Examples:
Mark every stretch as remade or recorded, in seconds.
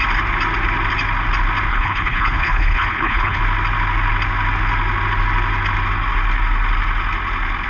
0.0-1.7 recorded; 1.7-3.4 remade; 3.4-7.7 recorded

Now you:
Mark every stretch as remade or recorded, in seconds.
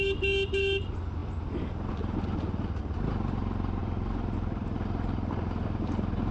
0.0-6.3 recorded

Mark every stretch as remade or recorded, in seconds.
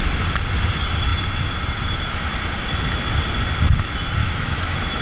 0.0-4.2 recorded; 4.2-5.0 remade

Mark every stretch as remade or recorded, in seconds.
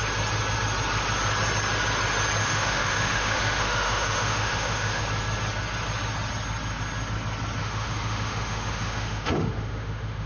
0.0-2.4 recorded; 2.4-5.0 remade; 5.0-7.6 recorded; 7.6-10.3 remade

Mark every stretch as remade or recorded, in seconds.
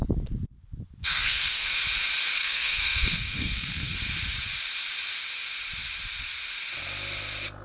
0.0-1.0 recorded; 1.0-1.8 remade; 1.8-2.4 recorded; 2.4-3.9 remade; 3.9-7.6 recorded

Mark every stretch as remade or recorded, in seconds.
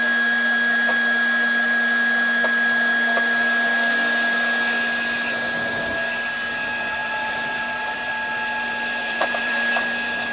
0.0-7.0 recorded; 7.0-8.1 remade; 8.1-9.0 recorded; 9.0-9.7 remade; 9.7-10.3 recorded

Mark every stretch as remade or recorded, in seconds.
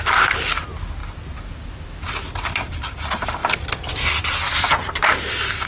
0.0-1.0 recorded; 1.0-1.6 remade; 1.6-5.7 recorded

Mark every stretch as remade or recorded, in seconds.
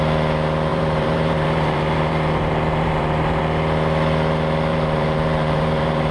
0.0-0.7 recorded; 0.7-3.4 remade; 3.4-4.7 recorded; 4.7-6.1 remade